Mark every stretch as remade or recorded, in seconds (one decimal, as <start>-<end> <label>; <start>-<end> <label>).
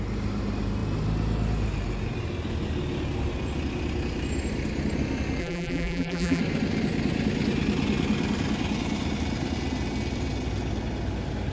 0.0-5.4 recorded; 5.4-6.4 remade; 6.4-11.5 recorded